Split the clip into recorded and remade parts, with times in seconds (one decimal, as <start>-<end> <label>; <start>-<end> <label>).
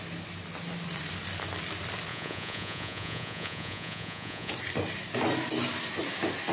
0.0-2.1 recorded; 2.1-4.5 remade; 4.5-6.5 recorded